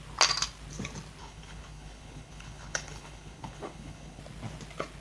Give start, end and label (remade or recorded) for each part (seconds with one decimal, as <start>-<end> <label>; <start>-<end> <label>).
0.0-1.2 recorded; 1.2-4.2 remade; 4.2-5.0 recorded